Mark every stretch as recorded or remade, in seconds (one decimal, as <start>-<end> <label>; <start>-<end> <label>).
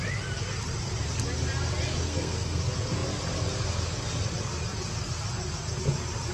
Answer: 0.0-2.0 recorded; 2.0-2.6 remade; 2.6-6.3 recorded